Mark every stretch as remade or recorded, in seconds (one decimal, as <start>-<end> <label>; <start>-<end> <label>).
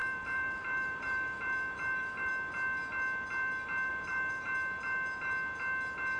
0.0-2.3 remade; 2.3-3.9 recorded; 3.9-4.5 remade; 4.5-6.2 recorded